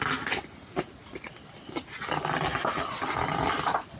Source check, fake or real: real